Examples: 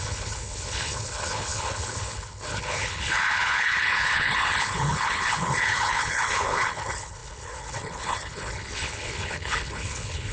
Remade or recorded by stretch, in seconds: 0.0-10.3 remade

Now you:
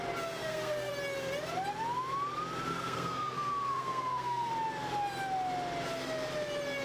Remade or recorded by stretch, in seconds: 0.0-0.4 recorded; 0.4-0.9 remade; 0.9-2.7 recorded; 2.7-4.5 remade; 4.5-6.8 recorded

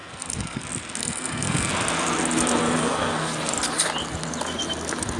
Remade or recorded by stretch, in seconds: 0.0-0.6 remade; 0.6-1.0 recorded; 1.0-1.7 remade; 1.7-2.8 recorded; 2.8-3.3 remade; 3.3-5.2 recorded

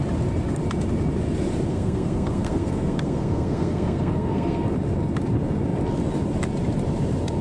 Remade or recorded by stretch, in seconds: 0.0-1.7 recorded; 1.7-4.6 remade; 4.6-7.4 recorded

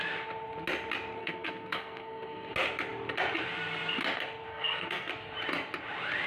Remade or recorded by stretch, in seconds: 0.0-1.2 recorded; 1.2-2.5 remade; 2.5-4.5 recorded; 4.5-5.1 remade; 5.1-6.3 recorded

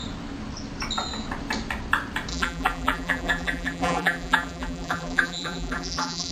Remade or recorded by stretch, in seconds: 0.0-2.3 recorded; 2.3-6.3 remade

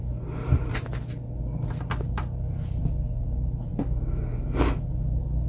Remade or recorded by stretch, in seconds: 0.0-5.5 recorded

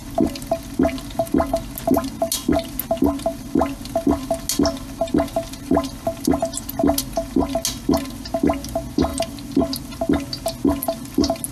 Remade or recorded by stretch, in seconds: 0.0-11.5 recorded